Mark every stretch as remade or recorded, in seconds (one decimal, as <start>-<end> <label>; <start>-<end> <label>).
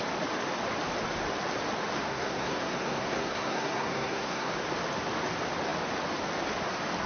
0.0-2.1 recorded; 2.1-4.5 remade; 4.5-7.1 recorded